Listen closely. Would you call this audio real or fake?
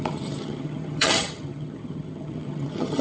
fake